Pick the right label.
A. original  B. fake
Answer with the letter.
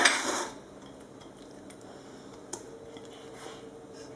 A